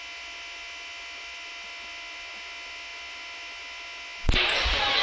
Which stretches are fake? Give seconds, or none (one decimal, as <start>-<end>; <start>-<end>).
none

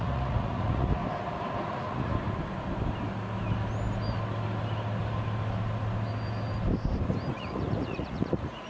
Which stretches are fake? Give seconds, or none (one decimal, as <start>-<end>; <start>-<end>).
0.0-1.0; 1.7-2.1; 7.3-8.7

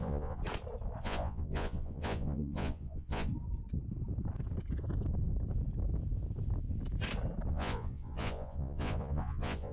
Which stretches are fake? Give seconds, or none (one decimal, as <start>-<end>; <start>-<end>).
0.0-0.4; 1.0-3.3; 7.5-9.7

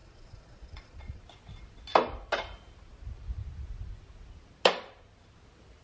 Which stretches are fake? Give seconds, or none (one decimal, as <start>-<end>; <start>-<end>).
0.0-1.2

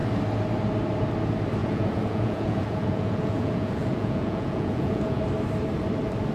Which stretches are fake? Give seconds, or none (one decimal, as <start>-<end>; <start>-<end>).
1.6-5.2

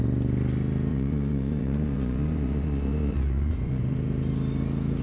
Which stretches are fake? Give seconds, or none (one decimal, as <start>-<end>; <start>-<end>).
0.9-3.9

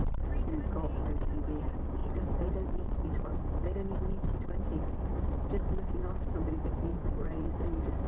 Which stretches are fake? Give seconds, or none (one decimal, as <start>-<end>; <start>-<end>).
2.0-3.3; 6.9-7.5

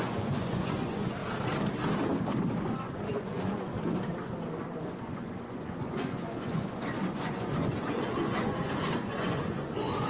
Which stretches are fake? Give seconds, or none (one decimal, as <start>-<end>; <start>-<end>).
0.0-1.2; 2.6-3.7; 4.8-10.1